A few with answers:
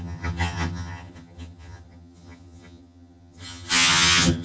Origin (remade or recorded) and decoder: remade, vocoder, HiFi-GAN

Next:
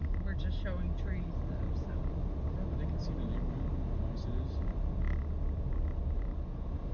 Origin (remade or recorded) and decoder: recorded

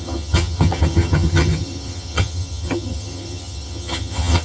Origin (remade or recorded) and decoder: remade, vocoder, HiFi-GAN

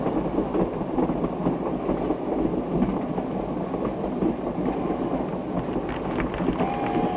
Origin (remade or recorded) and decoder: recorded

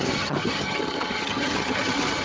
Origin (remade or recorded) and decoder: remade, vocoder, HiFi-GAN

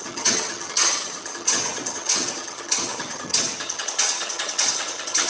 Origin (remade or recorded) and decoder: remade, vocoder, HiFi-GAN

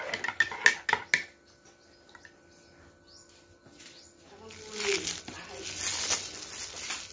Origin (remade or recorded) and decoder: recorded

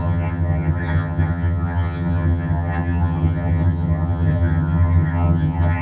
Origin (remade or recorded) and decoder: remade, vocoder, HiFi-GAN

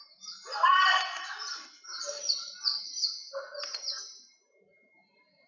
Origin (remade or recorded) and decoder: recorded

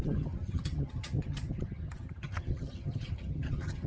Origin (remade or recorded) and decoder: remade, vocoder, HiFi-GAN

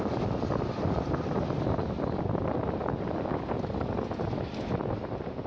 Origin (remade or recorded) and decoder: recorded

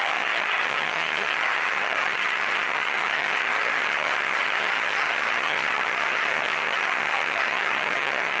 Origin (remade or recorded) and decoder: remade, vocoder, HiFi-GAN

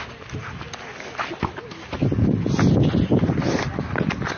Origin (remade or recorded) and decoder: recorded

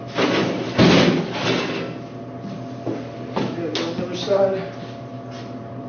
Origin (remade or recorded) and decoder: recorded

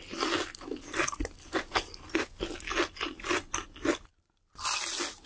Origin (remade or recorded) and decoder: recorded